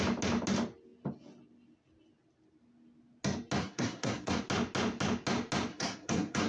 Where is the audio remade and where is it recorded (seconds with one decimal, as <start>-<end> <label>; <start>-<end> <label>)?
0.0-3.6 recorded; 3.6-4.4 remade; 4.4-5.7 recorded; 5.7-6.5 remade